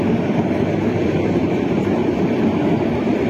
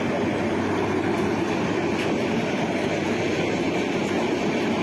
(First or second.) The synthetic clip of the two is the first